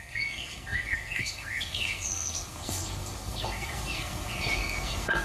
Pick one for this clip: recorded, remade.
remade